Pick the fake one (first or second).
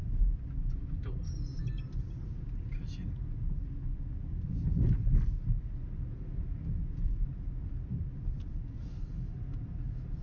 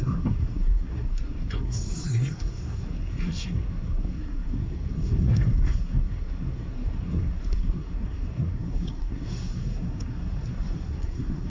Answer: second